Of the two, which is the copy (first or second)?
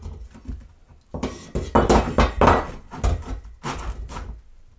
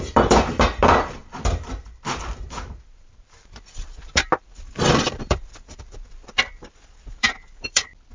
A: second